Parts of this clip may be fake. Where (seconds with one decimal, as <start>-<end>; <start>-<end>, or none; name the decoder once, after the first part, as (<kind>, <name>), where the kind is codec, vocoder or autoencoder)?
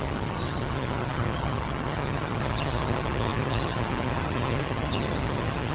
0.0-5.7 (vocoder, HiFi-GAN)